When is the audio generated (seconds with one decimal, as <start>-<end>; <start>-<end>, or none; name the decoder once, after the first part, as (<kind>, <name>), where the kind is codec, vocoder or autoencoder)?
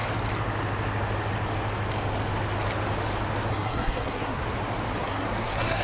3.5-4.4 (codec, SNAC); 5.0-5.8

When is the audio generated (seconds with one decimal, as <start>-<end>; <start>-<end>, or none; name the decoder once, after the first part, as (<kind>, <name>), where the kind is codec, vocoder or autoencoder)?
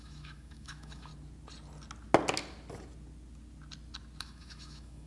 0.0-1.1 (autoencoder, DAC-VAE); 4.2-5.1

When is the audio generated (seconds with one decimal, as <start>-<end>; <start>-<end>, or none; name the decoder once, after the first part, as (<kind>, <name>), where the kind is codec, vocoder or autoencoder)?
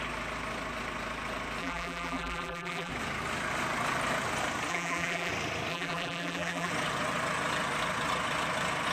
1.6-2.9 (vocoder, BigVGAN v2); 4.7-5.3; 5.7-6.7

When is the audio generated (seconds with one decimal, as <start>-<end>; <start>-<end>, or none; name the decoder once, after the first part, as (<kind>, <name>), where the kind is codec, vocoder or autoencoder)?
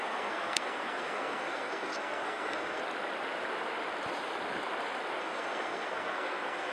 0.0-2.8 (codec, SNAC); 5.2-6.7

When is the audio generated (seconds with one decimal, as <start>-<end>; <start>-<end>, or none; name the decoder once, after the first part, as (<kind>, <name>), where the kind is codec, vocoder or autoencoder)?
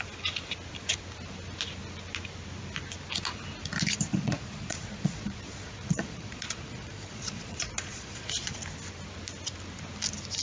4.1-8.6 (vocoder, Vocos)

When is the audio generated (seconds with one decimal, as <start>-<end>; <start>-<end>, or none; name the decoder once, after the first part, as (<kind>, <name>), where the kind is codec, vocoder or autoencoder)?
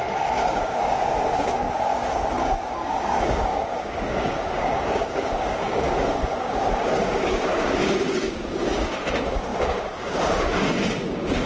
0.0-11.5 (codec, DAC)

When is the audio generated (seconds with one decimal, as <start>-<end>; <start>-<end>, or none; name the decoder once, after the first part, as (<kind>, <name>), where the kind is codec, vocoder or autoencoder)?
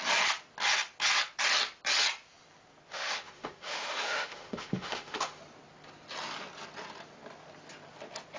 2.9-5.4 (autoencoder, DAC-VAE)